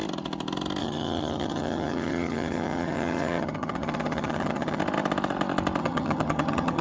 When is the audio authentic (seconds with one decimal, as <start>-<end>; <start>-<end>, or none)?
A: 0.0-0.8; 4.8-5.8